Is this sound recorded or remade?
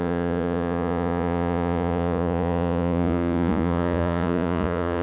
remade